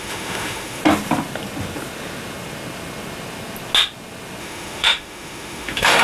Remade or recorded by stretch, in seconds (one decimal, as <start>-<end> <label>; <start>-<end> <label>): 0.0-0.8 remade; 0.8-4.4 recorded; 4.4-6.0 remade